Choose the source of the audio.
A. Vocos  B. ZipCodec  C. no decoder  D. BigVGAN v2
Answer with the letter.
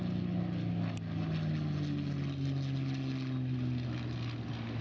C